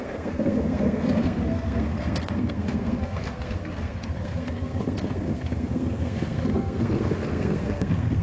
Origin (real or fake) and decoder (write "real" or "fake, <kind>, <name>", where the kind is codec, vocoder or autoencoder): fake, codec, SNAC